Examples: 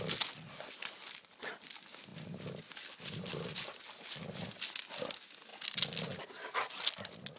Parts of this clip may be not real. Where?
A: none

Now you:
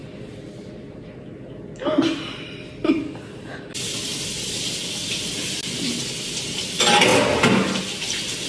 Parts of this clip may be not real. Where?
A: none